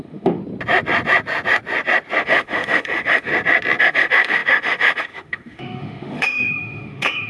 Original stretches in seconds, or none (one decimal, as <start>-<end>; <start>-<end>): 0.4-2.2; 3.3-3.8